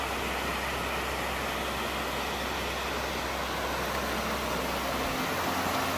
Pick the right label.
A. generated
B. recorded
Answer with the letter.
B